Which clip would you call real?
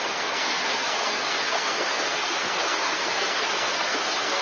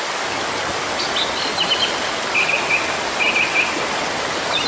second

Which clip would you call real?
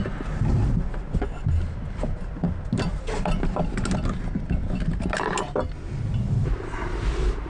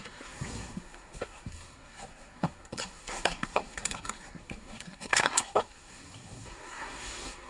first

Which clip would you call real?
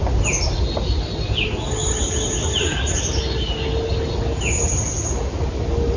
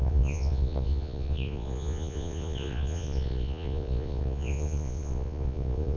first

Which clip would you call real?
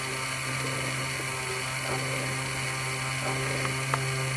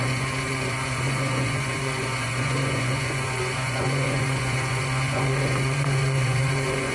first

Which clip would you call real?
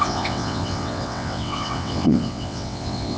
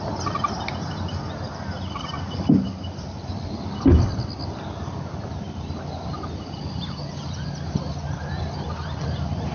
second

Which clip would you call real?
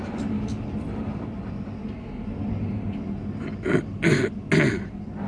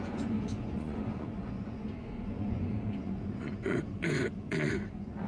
first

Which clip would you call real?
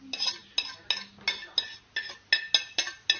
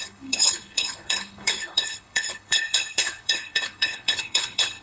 first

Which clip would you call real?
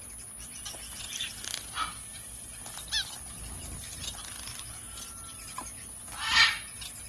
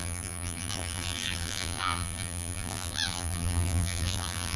first